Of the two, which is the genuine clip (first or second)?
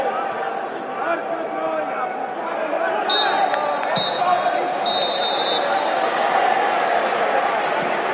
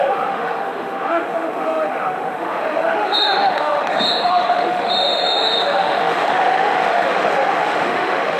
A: first